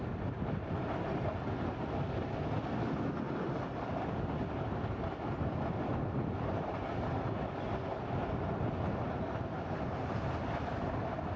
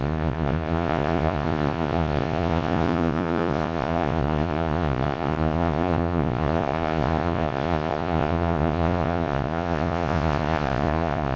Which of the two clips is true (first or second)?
first